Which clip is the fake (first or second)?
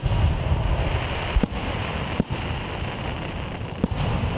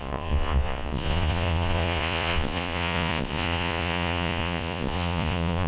second